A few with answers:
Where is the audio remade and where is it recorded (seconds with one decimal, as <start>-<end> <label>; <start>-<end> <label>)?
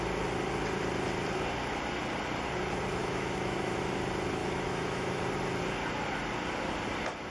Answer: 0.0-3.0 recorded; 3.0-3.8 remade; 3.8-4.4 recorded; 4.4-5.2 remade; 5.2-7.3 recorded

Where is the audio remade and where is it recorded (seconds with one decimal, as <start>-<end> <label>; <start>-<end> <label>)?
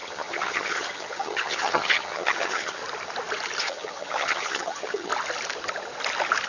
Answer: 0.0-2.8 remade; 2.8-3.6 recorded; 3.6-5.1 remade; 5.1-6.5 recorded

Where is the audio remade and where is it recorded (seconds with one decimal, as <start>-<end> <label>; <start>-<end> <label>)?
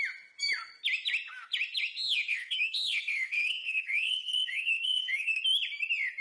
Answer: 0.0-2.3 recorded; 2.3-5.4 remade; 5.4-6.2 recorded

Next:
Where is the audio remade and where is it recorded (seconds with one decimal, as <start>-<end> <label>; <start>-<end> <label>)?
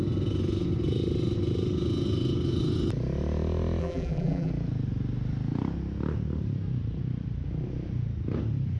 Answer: 0.0-3.8 recorded; 3.8-4.5 remade; 4.5-8.8 recorded